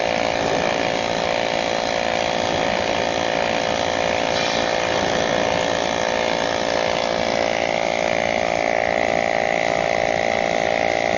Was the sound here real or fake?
real